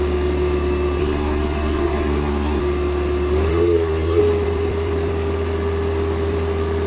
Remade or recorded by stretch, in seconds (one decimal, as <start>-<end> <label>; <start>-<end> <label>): 0.0-1.0 recorded; 1.0-2.6 remade; 2.6-3.5 recorded; 3.5-4.2 remade; 4.2-6.9 recorded